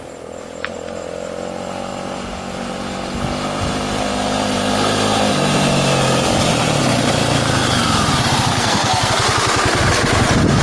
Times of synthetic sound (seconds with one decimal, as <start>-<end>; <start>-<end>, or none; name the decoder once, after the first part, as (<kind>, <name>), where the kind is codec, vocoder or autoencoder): 8.5-9.1 (codec, SNAC)